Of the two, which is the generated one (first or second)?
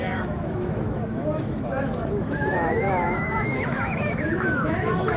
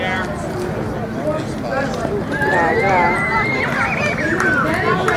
first